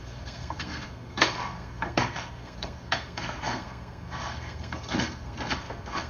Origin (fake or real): fake